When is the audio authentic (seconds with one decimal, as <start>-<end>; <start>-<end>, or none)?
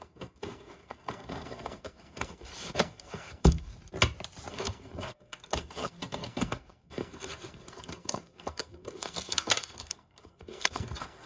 3.7-4.5